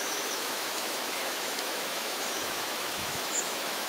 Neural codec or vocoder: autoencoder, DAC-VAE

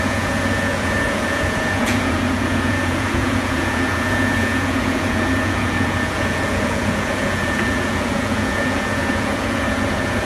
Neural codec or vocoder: vocoder, Vocos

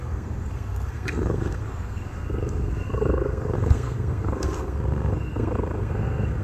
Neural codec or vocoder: codec, SNAC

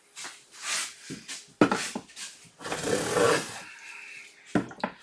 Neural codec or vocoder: none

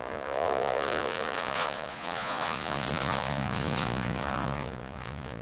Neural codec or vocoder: vocoder, Vocos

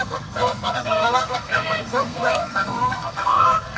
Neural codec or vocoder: codec, SNAC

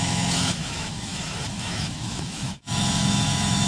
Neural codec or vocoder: autoencoder, DAC-VAE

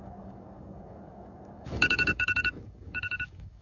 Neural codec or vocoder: codec, DAC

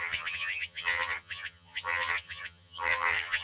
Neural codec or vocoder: vocoder, HiFi-GAN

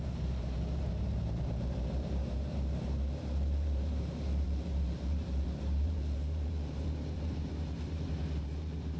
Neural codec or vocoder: vocoder, BigVGAN v2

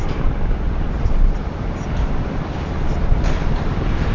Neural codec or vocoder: vocoder, BigVGAN v2